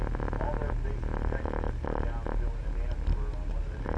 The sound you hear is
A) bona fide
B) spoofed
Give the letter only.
A